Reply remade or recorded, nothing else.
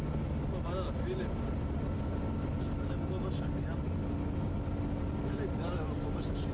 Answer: recorded